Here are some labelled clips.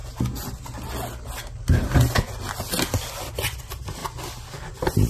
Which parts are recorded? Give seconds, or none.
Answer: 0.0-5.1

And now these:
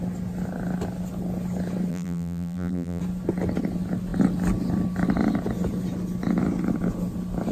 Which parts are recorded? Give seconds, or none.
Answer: 0.0-1.9; 3.0-7.5

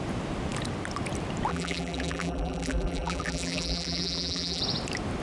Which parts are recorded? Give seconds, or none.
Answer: 0.0-1.5; 4.6-5.2

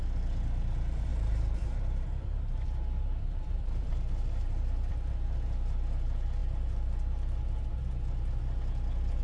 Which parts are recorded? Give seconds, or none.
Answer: 0.0-1.1; 4.9-9.2

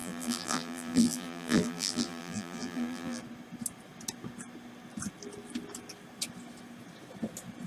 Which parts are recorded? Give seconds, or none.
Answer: 3.2-7.7

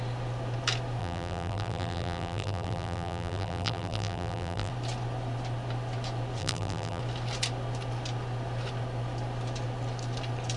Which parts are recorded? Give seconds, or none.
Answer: 0.0-1.0; 4.7-6.4; 7.0-10.6